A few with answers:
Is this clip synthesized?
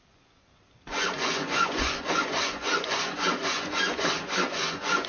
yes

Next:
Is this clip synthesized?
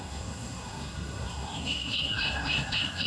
yes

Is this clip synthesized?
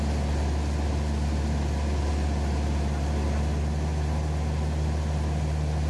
no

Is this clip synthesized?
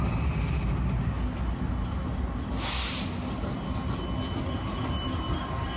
no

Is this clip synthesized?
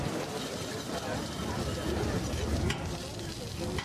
no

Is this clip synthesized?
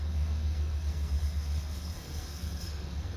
yes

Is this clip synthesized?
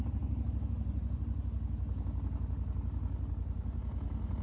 no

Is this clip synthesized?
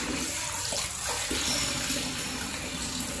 no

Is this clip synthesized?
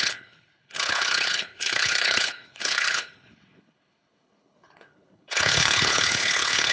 yes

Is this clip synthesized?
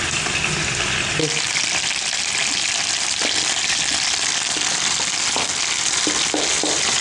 no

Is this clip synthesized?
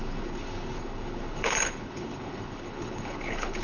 yes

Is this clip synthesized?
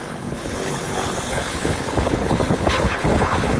yes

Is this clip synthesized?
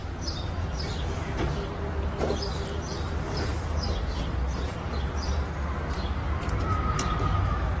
no